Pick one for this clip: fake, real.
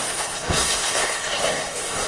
fake